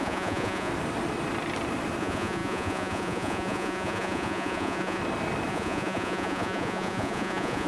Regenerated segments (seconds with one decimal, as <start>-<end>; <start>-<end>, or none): 0.0-0.7; 2.0-5.0; 5.5-7.7